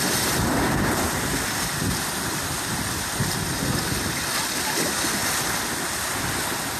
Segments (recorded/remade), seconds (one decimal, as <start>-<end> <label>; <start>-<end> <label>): 0.0-6.8 recorded